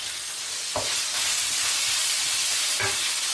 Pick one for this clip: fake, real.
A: real